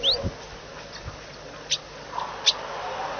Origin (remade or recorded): recorded